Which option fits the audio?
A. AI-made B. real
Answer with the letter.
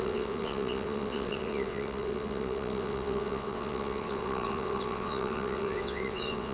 A